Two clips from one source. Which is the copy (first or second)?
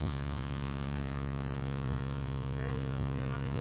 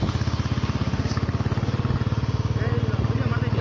first